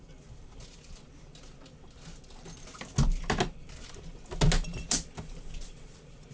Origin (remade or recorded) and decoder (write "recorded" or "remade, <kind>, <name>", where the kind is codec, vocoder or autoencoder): recorded